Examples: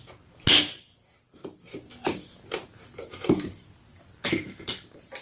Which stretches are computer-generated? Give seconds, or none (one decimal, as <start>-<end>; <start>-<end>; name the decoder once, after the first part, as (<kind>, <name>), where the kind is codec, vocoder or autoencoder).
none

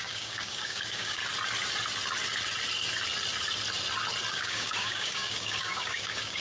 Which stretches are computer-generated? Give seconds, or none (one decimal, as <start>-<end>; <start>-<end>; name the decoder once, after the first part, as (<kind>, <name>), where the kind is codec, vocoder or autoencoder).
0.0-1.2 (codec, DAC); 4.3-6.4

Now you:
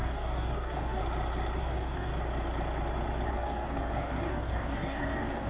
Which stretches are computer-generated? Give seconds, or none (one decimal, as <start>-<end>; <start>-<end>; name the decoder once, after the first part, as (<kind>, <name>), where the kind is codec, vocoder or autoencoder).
0.0-1.0 (codec, DAC); 1.6-2.1; 3.3-5.5